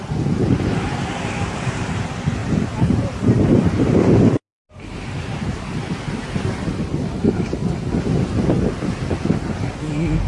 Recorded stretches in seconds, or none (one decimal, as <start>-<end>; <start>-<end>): 0.0-0.4; 2.0-2.4; 5.6-10.3